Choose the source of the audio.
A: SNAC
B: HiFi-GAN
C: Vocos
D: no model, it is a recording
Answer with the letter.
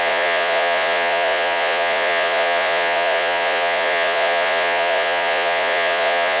C